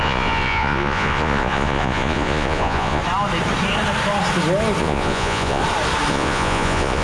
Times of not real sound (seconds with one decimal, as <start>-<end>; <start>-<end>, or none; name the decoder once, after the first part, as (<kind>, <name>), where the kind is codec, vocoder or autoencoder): 0.0-3.0 (vocoder, Vocos); 4.8-5.6; 6.1-7.0